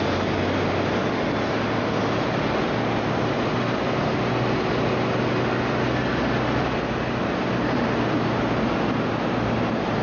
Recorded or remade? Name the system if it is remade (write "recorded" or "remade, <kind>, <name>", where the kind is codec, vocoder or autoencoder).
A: recorded